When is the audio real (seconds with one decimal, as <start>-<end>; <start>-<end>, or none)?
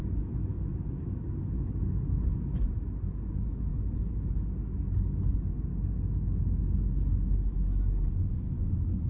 0.0-9.1